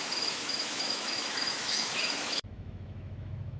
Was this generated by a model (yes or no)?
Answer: yes